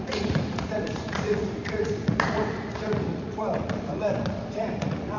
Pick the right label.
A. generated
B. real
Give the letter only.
A